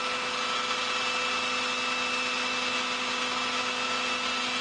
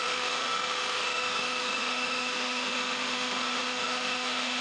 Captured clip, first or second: first